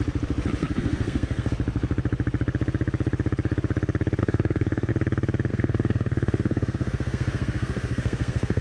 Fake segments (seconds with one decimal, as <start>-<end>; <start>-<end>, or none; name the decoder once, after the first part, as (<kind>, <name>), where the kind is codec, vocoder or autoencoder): 0.6-1.5 (codec, SNAC); 4.2-4.9; 5.5-8.6